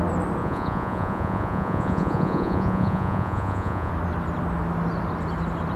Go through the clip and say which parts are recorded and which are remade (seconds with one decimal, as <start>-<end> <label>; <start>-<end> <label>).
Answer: 0.0-0.4 recorded; 0.4-3.9 remade; 3.9-5.8 recorded